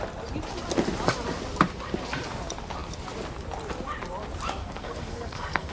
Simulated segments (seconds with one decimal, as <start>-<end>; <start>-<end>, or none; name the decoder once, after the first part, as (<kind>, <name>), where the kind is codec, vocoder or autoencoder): 4.6-5.7 (codec, SNAC)